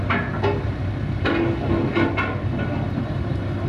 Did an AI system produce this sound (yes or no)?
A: no